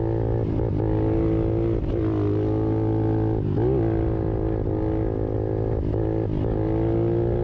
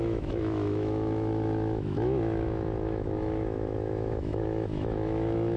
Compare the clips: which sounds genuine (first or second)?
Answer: first